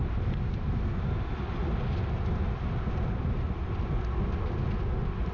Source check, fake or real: real